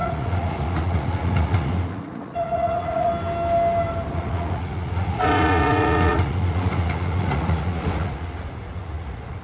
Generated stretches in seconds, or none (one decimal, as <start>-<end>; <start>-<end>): 0.0-3.1; 4.1-9.4